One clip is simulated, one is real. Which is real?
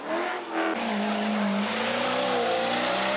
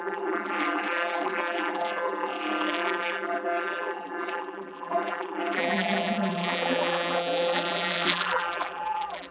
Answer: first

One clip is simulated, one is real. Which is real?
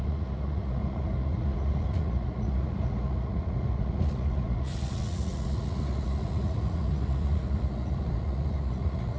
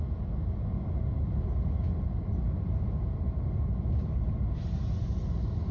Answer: second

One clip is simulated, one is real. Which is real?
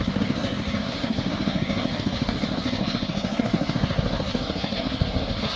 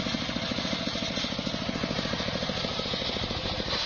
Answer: second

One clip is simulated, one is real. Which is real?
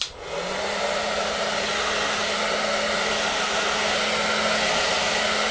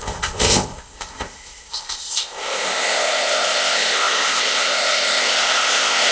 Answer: first